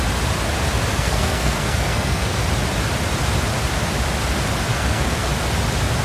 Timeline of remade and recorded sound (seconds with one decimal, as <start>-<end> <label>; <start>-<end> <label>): 0.0-0.9 recorded; 0.9-2.4 remade; 2.4-4.7 recorded; 4.7-5.3 remade; 5.3-6.0 recorded